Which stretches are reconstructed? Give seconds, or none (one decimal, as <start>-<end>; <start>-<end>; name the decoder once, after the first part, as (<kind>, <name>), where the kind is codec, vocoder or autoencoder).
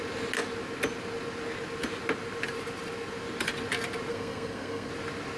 4.1-4.9 (codec, SNAC)